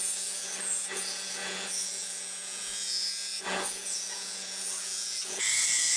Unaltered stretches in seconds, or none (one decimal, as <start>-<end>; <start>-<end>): none